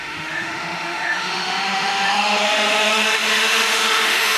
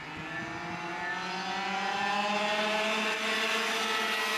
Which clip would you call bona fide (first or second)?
second